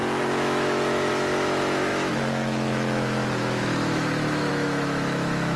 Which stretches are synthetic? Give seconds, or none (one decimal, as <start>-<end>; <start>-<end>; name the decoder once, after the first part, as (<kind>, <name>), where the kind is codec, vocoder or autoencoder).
0.0-5.6 (autoencoder, DAC-VAE)